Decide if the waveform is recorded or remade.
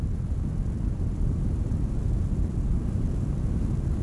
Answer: recorded